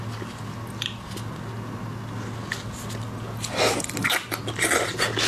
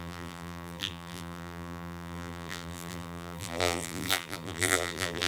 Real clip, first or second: first